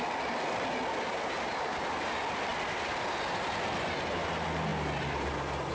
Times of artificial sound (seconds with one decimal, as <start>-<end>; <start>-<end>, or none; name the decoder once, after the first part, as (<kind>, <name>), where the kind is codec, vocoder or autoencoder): none